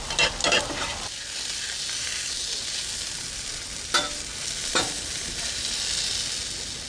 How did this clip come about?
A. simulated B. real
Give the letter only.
B